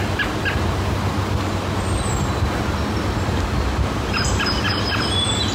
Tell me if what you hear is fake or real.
real